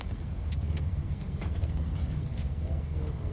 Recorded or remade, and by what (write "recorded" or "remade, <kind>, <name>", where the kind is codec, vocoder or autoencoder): remade, codec, SNAC